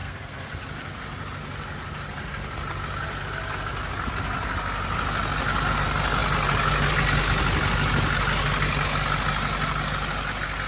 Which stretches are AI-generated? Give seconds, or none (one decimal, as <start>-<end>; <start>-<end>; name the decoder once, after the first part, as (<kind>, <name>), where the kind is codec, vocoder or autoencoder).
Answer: 0.0-0.5 (codec, SNAC)